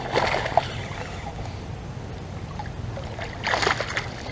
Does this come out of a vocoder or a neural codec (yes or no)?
no